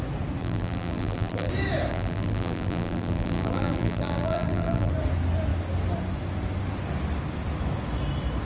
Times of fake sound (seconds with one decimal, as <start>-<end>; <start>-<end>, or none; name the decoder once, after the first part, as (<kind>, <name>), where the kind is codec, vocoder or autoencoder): 0.4-1.5 (vocoder, BigVGAN v2); 1.9-4.9